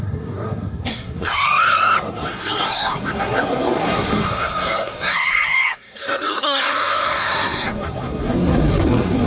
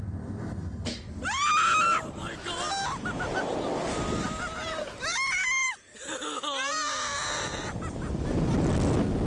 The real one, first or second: second